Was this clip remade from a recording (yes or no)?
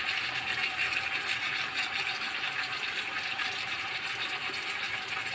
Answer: no